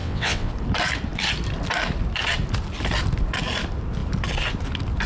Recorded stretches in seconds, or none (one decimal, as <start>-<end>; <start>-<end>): 0.5-5.1